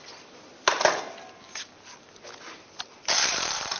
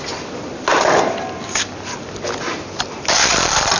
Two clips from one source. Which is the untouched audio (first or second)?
first